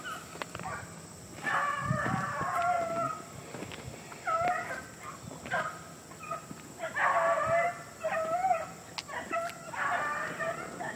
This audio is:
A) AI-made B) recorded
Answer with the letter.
B